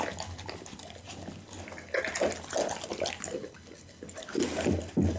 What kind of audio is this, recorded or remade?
recorded